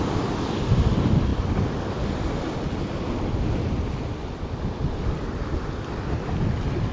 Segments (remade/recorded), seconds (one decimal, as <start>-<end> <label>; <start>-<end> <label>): 0.0-6.9 recorded